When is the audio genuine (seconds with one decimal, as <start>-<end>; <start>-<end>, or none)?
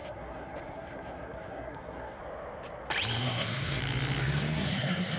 2.2-3.2; 3.8-4.2